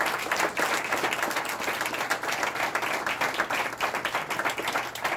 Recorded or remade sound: recorded